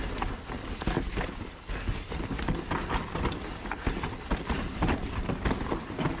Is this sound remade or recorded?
recorded